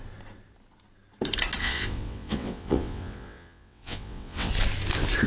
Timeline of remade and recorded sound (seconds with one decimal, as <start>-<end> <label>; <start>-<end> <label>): 0.0-1.6 recorded; 1.6-4.5 remade; 4.5-5.3 recorded